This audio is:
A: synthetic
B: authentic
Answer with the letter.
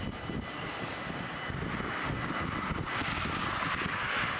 B